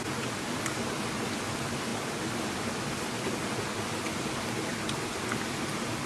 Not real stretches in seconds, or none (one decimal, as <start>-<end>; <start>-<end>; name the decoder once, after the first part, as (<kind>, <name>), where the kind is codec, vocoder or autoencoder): none